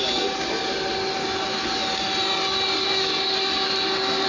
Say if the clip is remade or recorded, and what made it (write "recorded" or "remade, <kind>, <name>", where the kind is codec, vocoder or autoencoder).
recorded